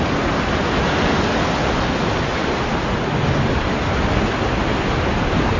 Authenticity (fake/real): real